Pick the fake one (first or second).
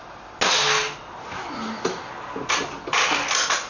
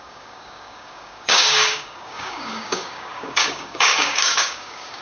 second